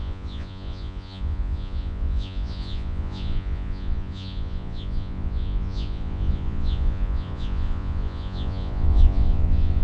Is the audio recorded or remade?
remade